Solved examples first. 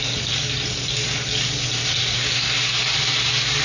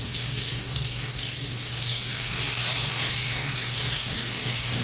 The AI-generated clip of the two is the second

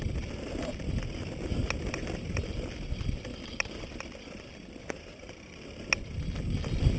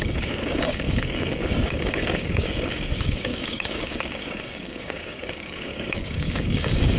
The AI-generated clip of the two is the second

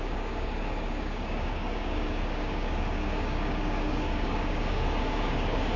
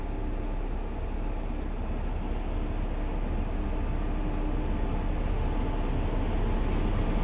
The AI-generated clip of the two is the first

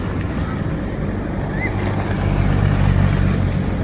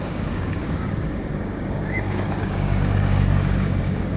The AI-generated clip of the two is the second